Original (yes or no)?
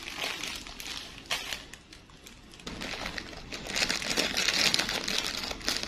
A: yes